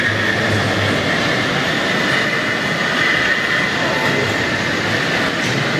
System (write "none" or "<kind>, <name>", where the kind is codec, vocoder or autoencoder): none